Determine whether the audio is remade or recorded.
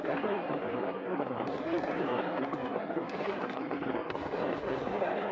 remade